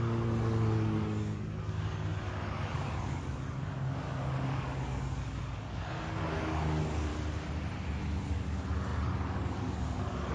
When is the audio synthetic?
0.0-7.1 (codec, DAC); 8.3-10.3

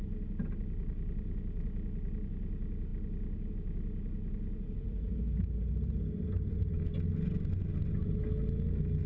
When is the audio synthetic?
none

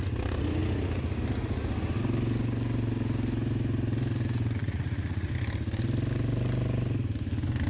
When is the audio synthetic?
4.6-5.3 (vocoder, Vocos)

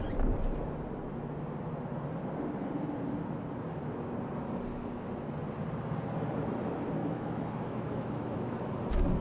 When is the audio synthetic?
7.0-8.7 (autoencoder, DAC-VAE)

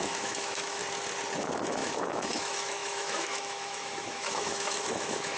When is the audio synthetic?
0.0-0.8 (autoencoder, DAC-VAE); 1.4-5.4

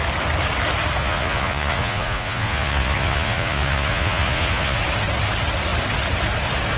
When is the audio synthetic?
1.0-4.8 (vocoder, Vocos)

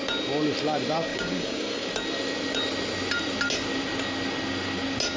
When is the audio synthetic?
1.1-1.9 (codec, DAC)